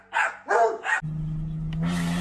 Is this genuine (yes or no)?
yes